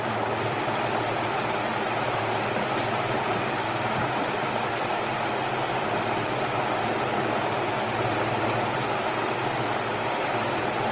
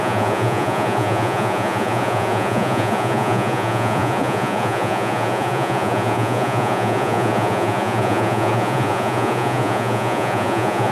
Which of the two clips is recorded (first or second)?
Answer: first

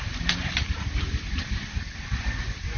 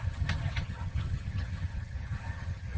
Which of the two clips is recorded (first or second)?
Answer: first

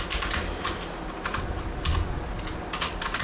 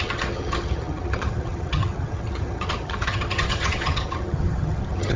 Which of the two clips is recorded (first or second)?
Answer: first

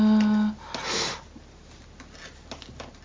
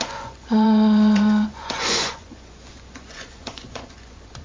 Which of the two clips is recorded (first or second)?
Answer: first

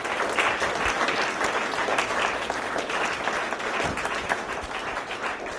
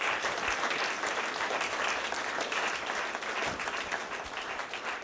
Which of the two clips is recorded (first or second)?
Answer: first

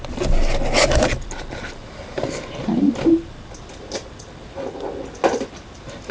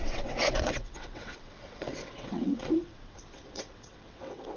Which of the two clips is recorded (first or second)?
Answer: first